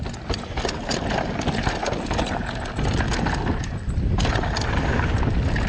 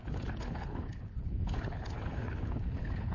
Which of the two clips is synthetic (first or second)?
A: second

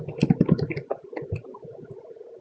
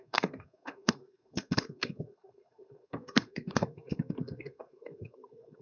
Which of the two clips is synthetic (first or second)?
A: second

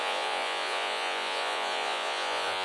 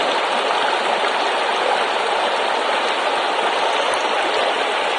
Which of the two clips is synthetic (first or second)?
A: first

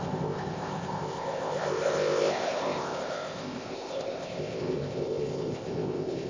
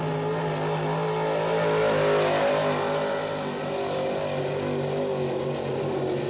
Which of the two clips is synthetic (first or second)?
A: first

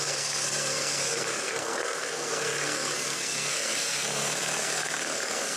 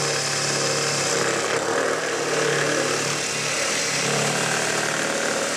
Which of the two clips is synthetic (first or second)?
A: first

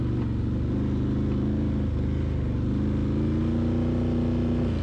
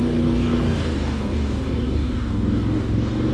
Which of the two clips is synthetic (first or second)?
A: second